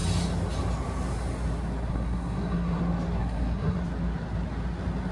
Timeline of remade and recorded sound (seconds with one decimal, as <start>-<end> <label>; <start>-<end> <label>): 0.0-1.9 recorded; 1.9-2.8 remade; 2.8-3.2 recorded; 3.2-3.8 remade; 3.8-5.1 recorded